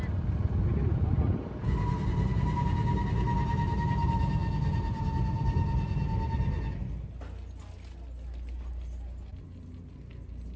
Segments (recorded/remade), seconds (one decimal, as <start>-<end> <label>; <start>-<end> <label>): 0.0-10.6 recorded